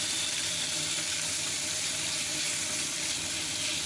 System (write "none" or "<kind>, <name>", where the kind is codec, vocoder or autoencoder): vocoder, BigVGAN v2